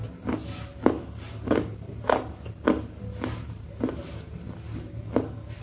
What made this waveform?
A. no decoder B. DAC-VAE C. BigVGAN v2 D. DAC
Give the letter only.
A